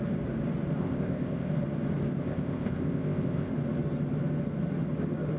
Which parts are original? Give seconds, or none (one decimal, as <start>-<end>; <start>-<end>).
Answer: 0.0-0.8; 1.5-2.2; 3.5-5.4

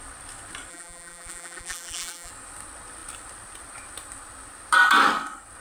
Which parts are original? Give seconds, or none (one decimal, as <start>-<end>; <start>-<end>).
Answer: 0.0-0.7; 2.3-5.6

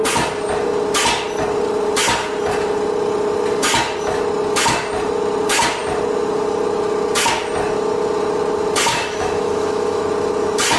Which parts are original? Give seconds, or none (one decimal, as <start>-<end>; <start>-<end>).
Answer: 0.0-8.9; 10.0-10.8

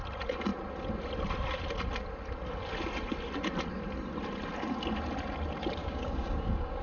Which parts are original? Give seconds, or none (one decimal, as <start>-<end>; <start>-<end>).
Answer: 0.0-5.8